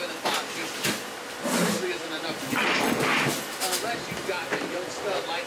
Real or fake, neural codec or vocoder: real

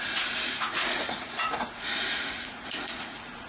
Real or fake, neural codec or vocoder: fake, vocoder, Vocos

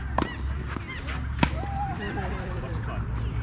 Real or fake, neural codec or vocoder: real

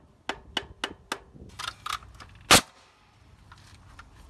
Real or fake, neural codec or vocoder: real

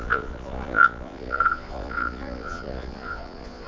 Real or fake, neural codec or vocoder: fake, vocoder, Vocos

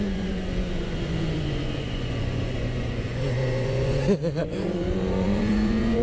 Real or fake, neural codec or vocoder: fake, vocoder, Vocos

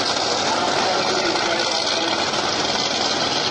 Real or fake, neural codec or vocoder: real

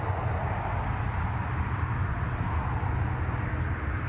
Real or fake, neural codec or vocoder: real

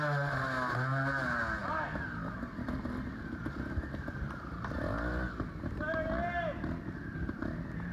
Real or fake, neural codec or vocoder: real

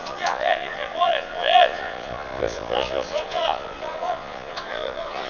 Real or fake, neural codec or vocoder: fake, vocoder, Vocos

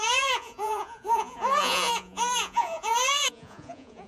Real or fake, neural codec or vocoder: fake, vocoder, Vocos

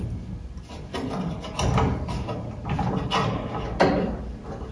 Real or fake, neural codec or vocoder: real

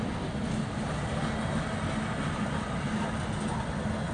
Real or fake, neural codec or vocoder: real